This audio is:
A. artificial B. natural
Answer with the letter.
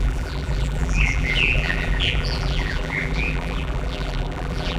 A